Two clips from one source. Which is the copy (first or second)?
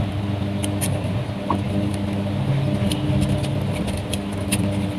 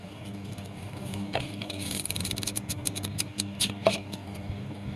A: second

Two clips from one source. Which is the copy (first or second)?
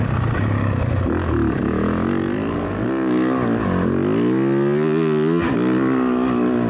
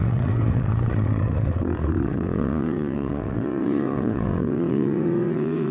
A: second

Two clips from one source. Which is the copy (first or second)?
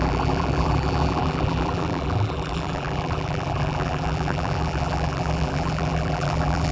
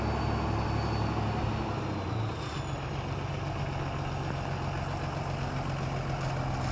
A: first